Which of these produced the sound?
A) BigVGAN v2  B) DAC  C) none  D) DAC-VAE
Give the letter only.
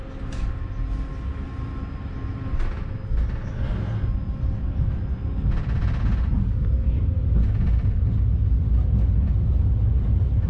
C